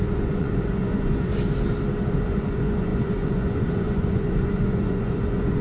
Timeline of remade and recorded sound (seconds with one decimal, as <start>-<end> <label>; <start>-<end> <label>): 0.0-1.3 remade; 1.3-2.1 recorded; 2.1-5.6 remade